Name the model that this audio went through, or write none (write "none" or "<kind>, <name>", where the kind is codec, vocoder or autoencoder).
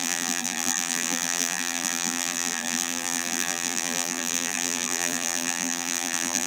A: vocoder, BigVGAN v2